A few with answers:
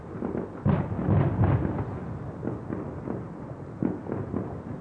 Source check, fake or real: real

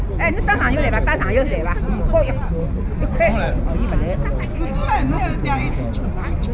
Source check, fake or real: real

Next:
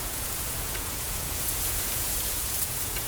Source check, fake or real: fake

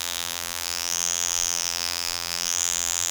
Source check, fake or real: fake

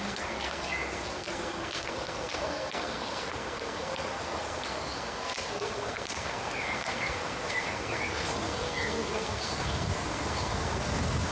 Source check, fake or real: fake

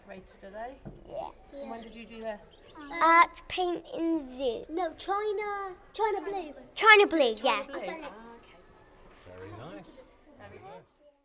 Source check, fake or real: real